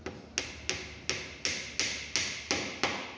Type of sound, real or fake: real